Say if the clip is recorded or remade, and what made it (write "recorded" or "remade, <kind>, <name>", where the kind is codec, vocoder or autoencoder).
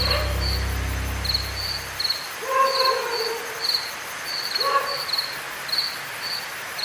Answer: recorded